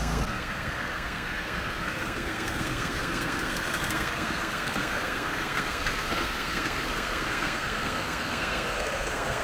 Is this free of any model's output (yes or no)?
no